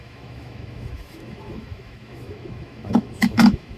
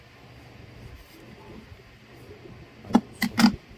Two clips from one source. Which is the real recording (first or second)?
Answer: second